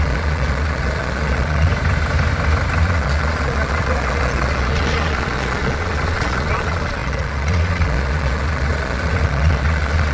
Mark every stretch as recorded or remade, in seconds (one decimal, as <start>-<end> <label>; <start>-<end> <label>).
0.0-1.7 remade; 1.7-2.8 recorded; 2.8-10.1 remade